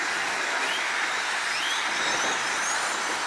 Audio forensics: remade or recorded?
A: recorded